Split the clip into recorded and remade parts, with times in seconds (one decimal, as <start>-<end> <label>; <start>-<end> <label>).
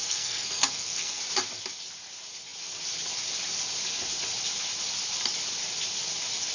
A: 0.0-1.2 remade; 1.2-6.5 recorded